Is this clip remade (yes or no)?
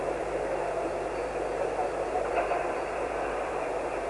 yes